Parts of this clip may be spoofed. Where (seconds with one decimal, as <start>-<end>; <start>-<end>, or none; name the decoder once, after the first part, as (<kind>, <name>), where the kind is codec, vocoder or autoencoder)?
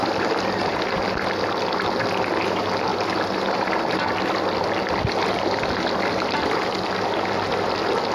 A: 0.0-0.9 (vocoder, BigVGAN v2); 2.9-6.9